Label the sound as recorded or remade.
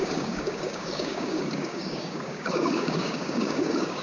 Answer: remade